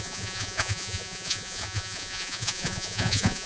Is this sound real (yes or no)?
no